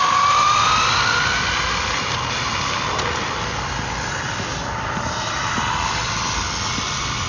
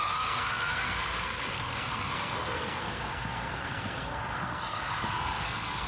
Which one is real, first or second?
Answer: first